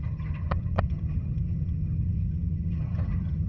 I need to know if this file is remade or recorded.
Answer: remade